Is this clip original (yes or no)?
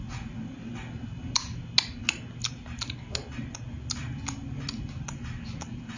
yes